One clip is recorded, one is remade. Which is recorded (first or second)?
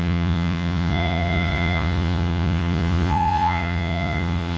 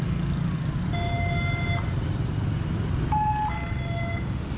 second